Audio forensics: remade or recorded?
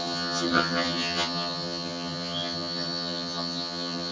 remade